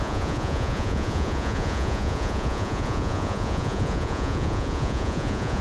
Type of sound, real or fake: fake